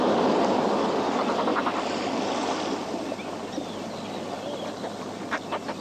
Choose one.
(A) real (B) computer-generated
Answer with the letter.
A